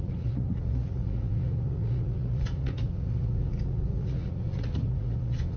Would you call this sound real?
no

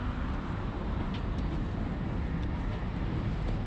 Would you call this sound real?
yes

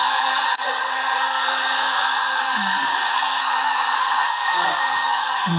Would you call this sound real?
no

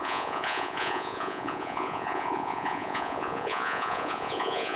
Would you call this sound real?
no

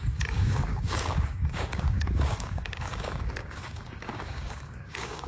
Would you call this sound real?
no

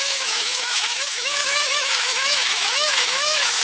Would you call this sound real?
no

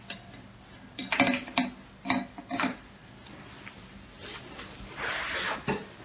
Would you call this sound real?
yes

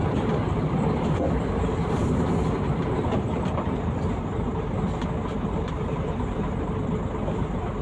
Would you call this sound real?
no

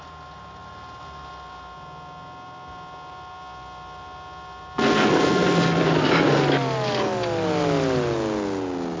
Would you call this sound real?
yes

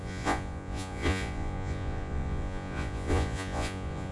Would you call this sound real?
no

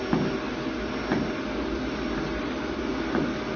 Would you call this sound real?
yes